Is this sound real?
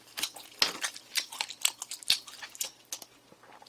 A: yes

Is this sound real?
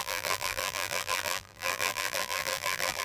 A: no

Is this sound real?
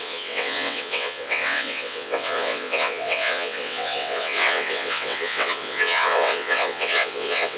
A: no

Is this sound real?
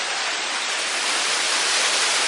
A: yes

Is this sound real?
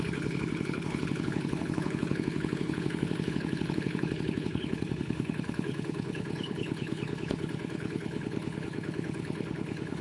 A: no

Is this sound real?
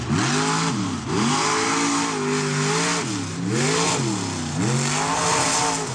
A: yes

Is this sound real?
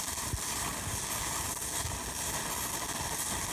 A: yes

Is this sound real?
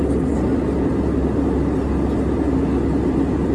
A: yes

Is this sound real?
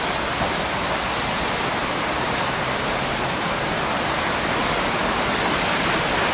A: yes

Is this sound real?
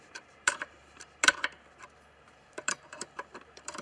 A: no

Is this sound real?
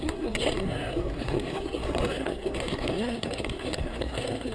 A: no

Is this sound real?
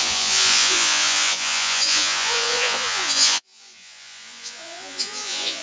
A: no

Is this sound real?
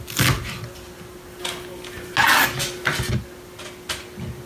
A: yes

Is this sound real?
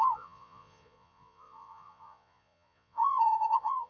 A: no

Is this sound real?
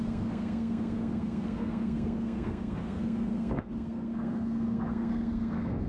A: no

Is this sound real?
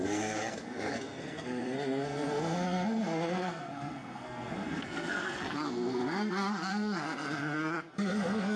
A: no